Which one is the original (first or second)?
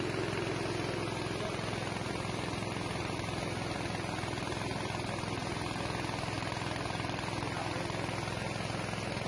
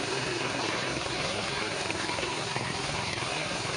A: first